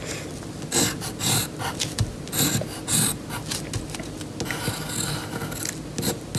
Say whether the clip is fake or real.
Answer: real